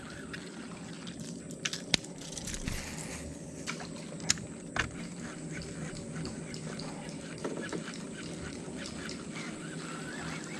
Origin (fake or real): real